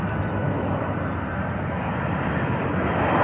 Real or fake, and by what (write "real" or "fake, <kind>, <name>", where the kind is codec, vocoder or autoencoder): real